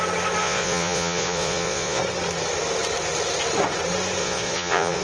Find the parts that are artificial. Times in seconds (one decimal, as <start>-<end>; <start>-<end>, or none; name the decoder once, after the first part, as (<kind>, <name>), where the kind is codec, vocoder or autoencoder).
0.4-2.0 (vocoder, Vocos); 4.2-5.0